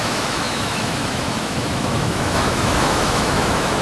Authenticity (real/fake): fake